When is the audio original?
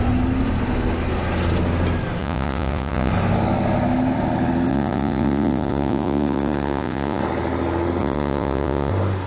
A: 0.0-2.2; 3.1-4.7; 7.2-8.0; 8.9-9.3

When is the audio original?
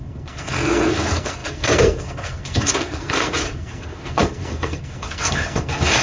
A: none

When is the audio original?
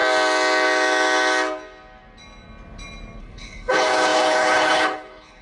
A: 0.0-3.2